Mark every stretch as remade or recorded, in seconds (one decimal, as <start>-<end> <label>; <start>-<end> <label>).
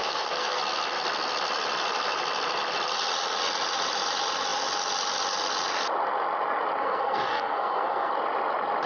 0.0-0.6 remade; 0.6-6.8 recorded; 6.8-8.1 remade; 8.1-8.9 recorded